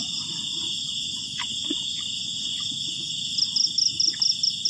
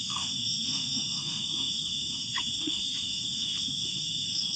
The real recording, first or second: first